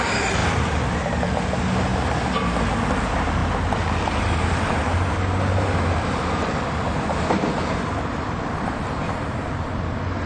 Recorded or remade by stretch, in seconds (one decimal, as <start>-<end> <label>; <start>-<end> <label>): 0.0-0.4 remade; 0.4-1.3 recorded; 1.3-1.9 remade; 1.9-2.9 recorded; 2.9-10.3 remade